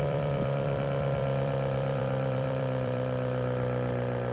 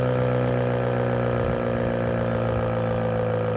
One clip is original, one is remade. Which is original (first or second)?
second